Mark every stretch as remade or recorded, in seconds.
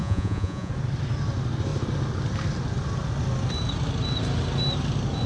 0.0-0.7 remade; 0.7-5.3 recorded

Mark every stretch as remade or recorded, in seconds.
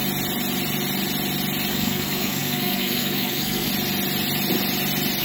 0.0-1.7 recorded; 1.7-3.7 remade; 3.7-5.2 recorded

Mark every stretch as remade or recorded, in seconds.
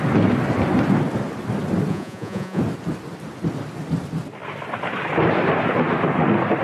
0.0-1.9 recorded; 1.9-2.6 remade; 2.6-6.6 recorded